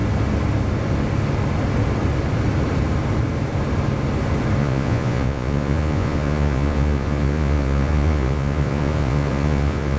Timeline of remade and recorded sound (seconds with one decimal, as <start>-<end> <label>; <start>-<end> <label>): 0.0-4.6 recorded; 4.6-10.0 remade